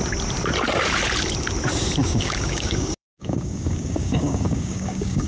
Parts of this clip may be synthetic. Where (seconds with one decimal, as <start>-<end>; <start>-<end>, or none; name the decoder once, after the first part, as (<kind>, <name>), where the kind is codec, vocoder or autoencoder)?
2.0-5.3 (codec, DAC)